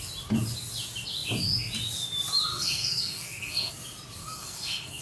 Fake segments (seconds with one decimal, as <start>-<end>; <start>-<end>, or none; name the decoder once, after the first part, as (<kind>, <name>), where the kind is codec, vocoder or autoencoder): 2.5-3.7 (codec, SNAC); 4.2-5.0